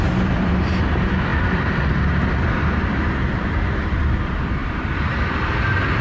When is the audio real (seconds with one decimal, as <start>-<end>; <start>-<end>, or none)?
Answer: none